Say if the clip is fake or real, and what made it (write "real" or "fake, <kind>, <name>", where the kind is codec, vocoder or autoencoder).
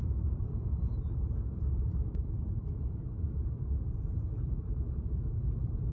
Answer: fake, vocoder, BigVGAN v2